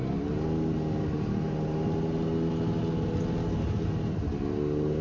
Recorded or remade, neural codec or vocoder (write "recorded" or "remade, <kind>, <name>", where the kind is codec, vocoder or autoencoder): recorded